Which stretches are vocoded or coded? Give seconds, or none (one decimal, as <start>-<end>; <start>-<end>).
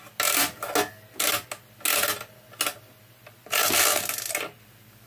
none